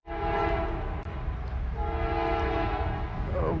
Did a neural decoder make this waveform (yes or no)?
no